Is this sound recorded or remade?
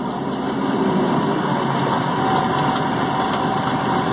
recorded